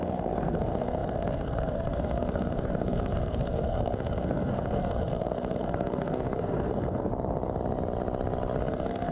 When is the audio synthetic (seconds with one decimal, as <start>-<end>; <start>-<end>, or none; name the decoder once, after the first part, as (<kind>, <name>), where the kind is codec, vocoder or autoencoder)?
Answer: 0.0-7.1 (codec, SNAC); 8.7-9.1